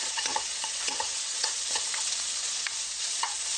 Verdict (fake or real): fake